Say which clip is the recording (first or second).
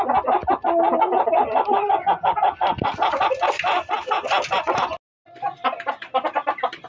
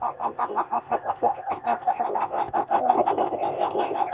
first